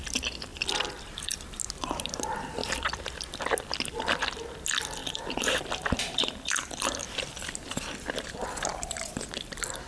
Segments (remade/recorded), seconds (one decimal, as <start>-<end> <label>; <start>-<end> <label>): 0.0-0.5 recorded; 0.5-1.5 remade; 1.5-5.0 recorded; 5.0-7.5 remade; 7.5-9.9 recorded